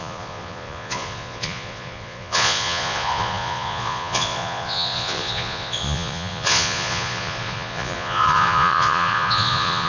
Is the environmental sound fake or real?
fake